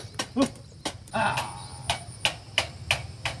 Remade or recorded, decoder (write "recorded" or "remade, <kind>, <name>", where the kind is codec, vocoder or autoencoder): recorded